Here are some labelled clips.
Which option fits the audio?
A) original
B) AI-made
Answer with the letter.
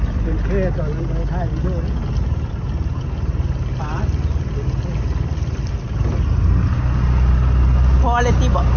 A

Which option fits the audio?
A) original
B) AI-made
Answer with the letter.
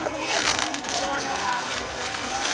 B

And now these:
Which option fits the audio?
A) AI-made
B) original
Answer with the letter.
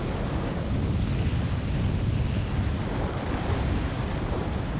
B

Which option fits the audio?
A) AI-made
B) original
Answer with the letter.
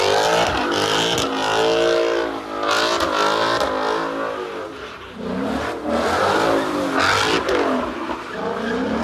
B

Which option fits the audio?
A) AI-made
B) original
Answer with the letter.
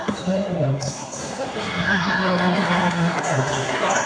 A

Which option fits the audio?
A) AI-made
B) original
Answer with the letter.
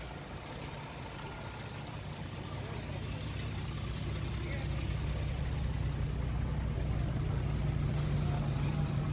B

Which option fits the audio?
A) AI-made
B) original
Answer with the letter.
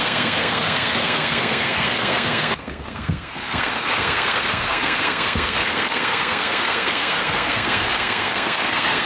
A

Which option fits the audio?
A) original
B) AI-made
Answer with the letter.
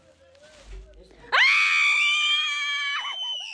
A